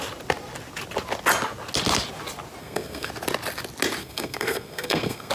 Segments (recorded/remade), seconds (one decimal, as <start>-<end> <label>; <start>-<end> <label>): 0.0-2.6 recorded; 2.6-3.1 remade; 3.1-4.0 recorded; 4.0-5.3 remade